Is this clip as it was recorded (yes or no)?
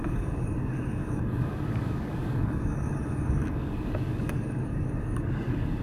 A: no